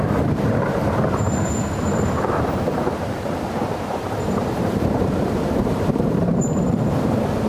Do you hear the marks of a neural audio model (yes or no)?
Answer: yes